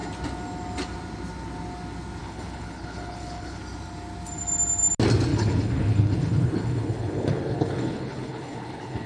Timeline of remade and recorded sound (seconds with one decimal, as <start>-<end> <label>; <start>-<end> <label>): 0.0-2.2 recorded; 2.2-3.6 remade; 3.6-5.3 recorded; 5.3-9.1 remade

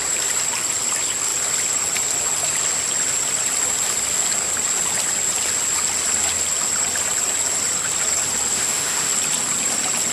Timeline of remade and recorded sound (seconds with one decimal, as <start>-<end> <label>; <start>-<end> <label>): 0.0-8.5 recorded; 8.5-9.1 remade; 9.1-10.1 recorded